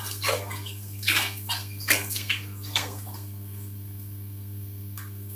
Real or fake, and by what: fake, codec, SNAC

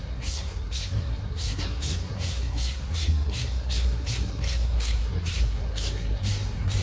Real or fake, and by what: fake, codec, SNAC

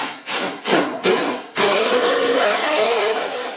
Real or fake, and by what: fake, codec, SNAC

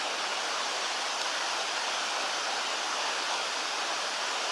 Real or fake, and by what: real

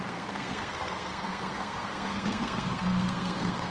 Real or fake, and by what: fake, codec, SNAC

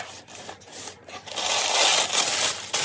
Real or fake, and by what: real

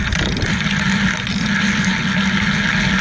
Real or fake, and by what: real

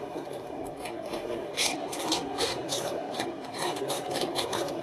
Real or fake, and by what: fake, codec, SNAC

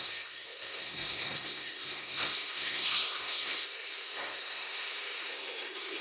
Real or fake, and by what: fake, codec, SNAC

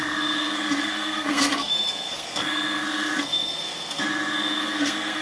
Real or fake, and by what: fake, codec, SNAC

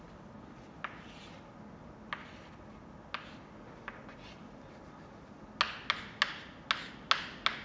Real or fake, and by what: real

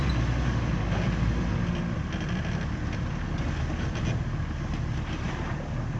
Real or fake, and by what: real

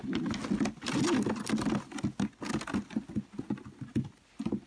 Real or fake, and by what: real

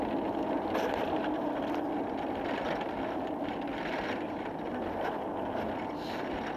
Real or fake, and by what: real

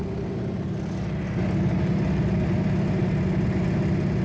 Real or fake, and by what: real